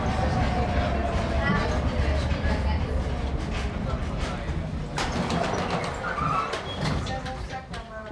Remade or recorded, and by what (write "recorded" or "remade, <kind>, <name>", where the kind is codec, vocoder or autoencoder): recorded